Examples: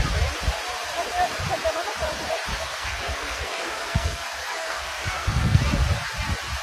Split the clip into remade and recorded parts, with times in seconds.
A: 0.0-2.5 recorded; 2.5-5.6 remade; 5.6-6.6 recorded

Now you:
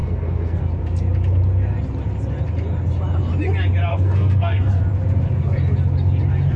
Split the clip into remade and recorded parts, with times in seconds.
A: 0.0-0.6 remade; 0.6-3.9 recorded; 3.9-4.8 remade; 4.8-6.6 recorded

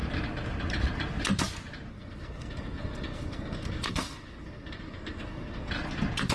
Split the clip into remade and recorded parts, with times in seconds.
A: 0.0-1.9 recorded; 1.9-5.7 remade; 5.7-6.3 recorded